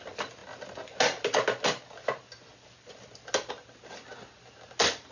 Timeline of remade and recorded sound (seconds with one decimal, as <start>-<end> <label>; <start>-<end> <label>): 0.0-5.1 recorded